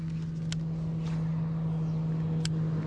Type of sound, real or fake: real